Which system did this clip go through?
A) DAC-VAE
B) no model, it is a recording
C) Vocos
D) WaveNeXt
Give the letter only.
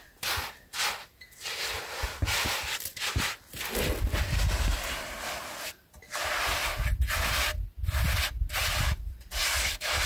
B